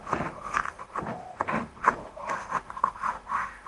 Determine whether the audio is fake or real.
fake